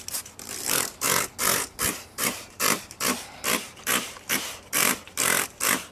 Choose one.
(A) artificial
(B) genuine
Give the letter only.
A